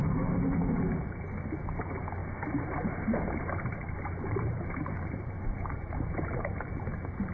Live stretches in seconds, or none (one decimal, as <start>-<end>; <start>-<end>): 0.0-2.2; 6.6-7.3